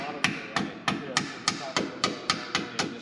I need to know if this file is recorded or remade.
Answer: recorded